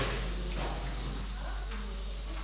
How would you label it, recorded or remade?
recorded